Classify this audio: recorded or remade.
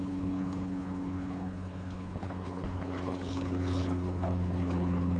remade